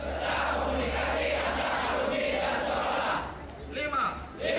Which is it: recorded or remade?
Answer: recorded